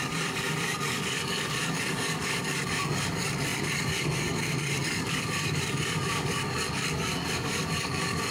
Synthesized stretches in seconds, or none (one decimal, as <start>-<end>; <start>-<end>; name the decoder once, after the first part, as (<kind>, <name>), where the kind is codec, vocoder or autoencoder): 0.0-8.3 (codec, DAC)